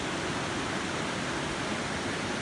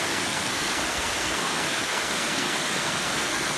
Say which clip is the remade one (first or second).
second